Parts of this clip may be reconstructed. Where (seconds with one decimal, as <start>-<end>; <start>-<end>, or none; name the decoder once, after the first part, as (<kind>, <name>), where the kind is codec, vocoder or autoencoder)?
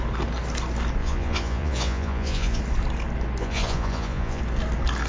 1.0-2.6 (vocoder, Vocos); 3.4-4.4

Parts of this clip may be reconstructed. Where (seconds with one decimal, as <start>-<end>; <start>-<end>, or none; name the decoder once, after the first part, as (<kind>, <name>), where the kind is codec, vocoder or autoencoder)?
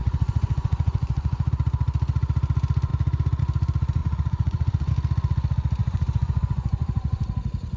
0.0-1.5 (vocoder, Vocos); 4.0-4.9; 5.8-7.3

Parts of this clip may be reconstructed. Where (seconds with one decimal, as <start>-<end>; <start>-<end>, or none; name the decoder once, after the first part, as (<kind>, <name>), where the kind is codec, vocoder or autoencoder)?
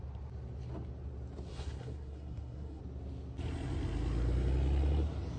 1.5-2.8 (codec, SNAC)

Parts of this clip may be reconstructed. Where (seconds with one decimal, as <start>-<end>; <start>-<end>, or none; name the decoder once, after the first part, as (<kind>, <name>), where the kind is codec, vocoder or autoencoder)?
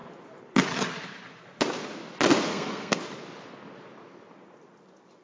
2.5-3.0 (codec, SNAC)